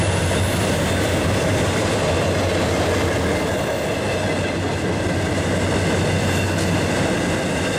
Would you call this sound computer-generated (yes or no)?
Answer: no